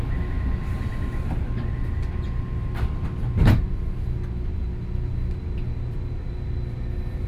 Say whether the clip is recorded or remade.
recorded